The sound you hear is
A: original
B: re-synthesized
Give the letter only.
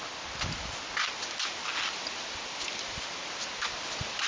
A